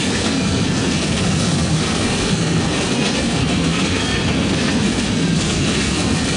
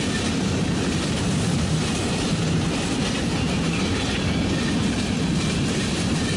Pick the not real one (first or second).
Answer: first